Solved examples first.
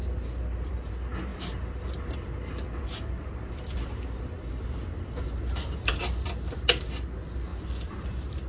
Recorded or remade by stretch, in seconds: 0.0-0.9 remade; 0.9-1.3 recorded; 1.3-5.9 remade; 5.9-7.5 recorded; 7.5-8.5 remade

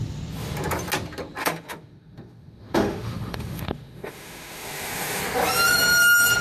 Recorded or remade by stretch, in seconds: 0.0-1.4 recorded; 1.4-5.2 remade; 5.2-6.4 recorded

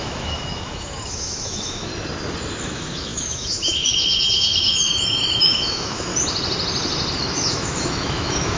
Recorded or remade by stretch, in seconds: 0.0-1.9 remade; 1.9-2.6 recorded; 2.6-6.1 remade; 6.1-7.2 recorded; 7.2-8.6 remade

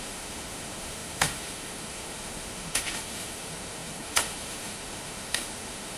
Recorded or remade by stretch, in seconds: 0.0-6.0 remade